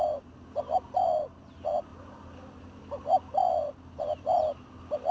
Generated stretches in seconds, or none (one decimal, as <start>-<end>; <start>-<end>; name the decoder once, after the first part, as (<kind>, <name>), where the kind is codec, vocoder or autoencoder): 0.0-5.1 (vocoder, BigVGAN v2)